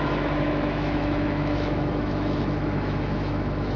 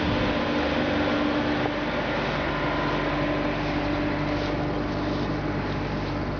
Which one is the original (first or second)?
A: second